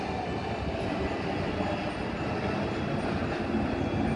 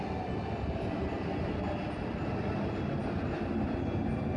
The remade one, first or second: first